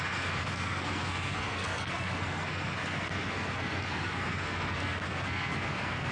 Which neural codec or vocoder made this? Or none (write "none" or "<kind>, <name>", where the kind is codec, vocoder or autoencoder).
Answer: codec, SNAC